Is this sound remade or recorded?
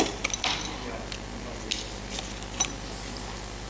recorded